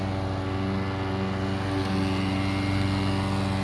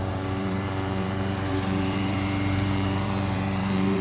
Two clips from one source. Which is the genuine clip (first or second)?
first